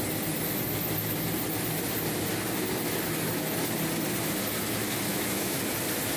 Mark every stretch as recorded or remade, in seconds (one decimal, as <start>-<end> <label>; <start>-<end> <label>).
0.0-5.1 recorded; 5.1-5.6 remade; 5.6-6.2 recorded